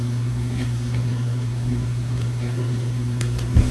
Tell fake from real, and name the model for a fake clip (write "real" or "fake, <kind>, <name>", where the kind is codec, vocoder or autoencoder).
fake, codec, SNAC